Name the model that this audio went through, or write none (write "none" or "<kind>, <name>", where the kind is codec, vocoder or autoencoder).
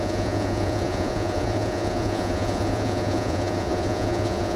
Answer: vocoder, Vocos